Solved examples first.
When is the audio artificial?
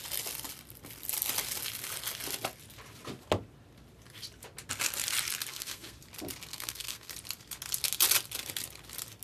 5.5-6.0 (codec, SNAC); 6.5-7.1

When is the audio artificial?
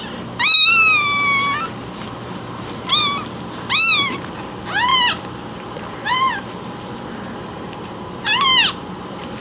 none